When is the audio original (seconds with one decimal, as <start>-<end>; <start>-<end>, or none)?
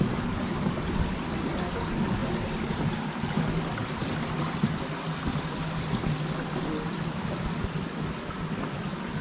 0.0-9.2